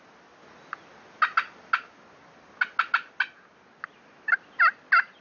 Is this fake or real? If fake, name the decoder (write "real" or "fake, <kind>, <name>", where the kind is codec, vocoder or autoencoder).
real